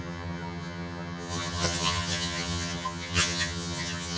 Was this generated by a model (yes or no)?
yes